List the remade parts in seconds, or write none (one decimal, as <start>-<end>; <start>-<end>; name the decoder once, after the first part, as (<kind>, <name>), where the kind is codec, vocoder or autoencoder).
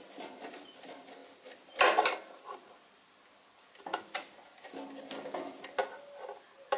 none